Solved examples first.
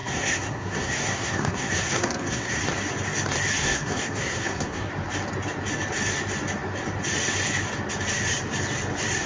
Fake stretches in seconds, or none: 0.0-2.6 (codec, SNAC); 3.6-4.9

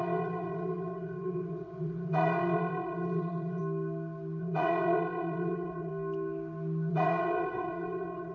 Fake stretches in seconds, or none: 0.0-3.6 (vocoder, WaveNeXt); 4.4-5.9; 6.9-8.3

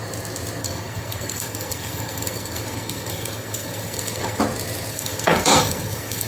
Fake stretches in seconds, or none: 0.6-4.4 (codec, SNAC); 4.9-6.3

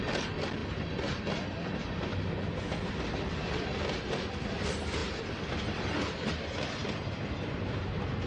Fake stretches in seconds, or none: none

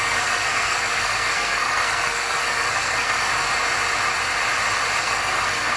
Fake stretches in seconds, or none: 0.0-3.3 (codec, SNAC); 5.0-5.8

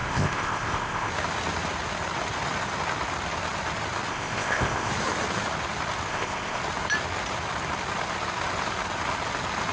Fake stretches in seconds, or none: 0.0-1.1 (codec, ZipCodec); 4.1-4.9; 6.1-6.6

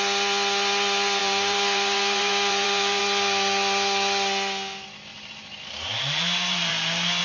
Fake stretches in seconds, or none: 1.2-3.0 (vocoder, BigVGAN v2); 5.1-7.2